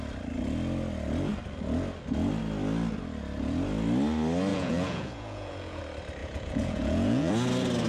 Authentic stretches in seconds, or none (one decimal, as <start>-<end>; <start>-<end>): 0.0-4.5; 5.8-6.2; 7.3-7.9